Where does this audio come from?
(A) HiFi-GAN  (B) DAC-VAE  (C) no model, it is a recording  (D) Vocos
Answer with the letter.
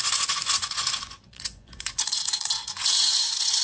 D